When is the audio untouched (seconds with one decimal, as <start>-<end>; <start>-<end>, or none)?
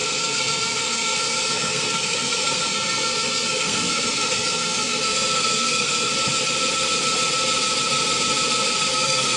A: 6.1-8.9